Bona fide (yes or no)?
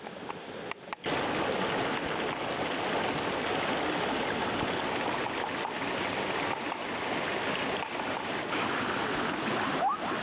yes